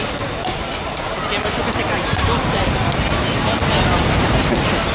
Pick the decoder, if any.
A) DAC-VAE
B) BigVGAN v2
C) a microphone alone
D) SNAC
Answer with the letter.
C